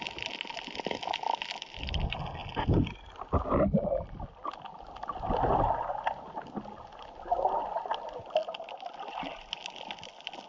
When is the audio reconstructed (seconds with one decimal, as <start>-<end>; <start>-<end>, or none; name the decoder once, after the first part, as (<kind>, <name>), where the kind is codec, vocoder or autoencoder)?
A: none